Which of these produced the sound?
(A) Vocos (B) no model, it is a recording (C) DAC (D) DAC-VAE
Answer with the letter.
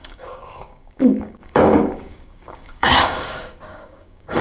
C